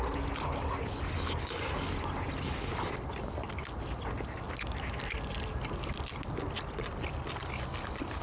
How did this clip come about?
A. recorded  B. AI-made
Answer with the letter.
A